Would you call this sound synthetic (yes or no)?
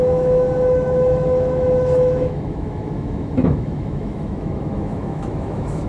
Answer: yes